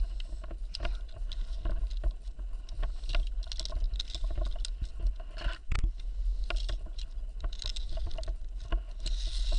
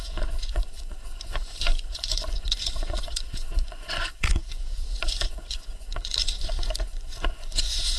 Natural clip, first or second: first